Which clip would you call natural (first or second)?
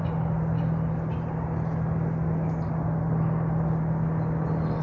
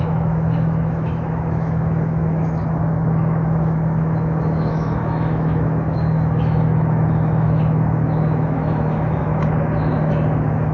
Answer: first